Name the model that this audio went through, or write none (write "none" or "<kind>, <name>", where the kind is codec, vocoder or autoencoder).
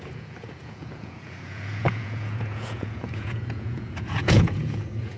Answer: vocoder, Vocos